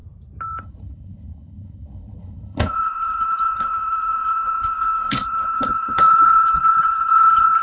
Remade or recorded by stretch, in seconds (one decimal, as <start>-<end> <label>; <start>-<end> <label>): 0.0-0.6 recorded; 0.6-7.6 remade